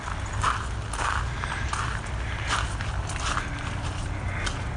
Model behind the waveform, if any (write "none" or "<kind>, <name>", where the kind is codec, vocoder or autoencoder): none